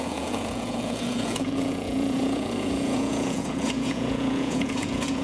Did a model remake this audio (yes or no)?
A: yes